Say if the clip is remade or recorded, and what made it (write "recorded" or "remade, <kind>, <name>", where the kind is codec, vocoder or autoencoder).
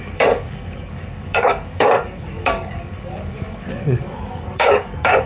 remade, codec, DAC